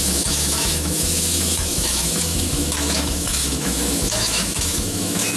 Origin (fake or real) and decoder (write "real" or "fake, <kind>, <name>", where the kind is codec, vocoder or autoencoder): fake, autoencoder, DAC-VAE